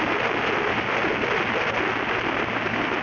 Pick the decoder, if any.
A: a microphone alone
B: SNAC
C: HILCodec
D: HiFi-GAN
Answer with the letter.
A